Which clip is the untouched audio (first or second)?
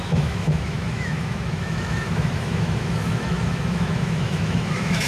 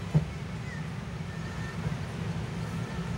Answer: second